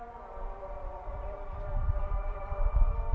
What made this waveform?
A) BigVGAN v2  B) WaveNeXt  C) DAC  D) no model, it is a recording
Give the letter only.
A